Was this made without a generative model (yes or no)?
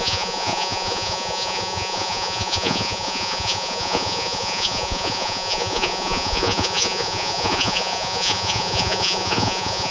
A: no